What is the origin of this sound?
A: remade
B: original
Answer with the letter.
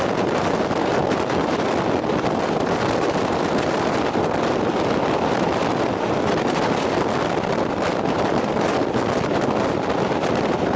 A